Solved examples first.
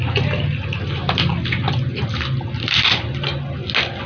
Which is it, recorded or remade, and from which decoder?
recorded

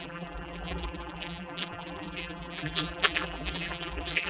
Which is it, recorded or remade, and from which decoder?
remade, vocoder, BigVGAN v2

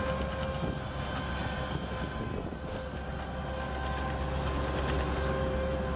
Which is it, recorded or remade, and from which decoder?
recorded